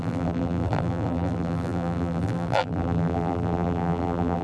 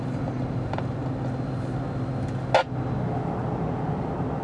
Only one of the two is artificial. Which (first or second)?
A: first